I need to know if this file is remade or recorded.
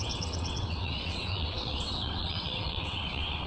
remade